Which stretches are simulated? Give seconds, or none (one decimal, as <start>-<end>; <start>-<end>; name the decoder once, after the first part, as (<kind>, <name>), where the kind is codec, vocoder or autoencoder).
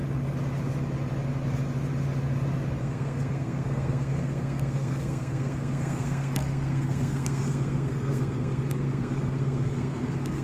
2.8-10.4 (codec, SNAC)